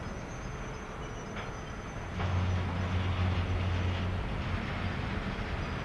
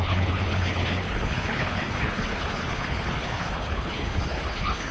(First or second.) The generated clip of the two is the second